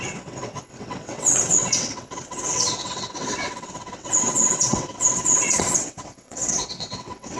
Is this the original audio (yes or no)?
no